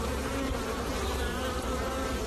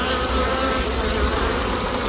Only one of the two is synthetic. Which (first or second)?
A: first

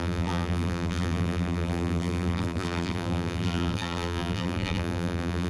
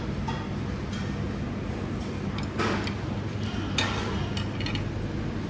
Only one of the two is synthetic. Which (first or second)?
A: first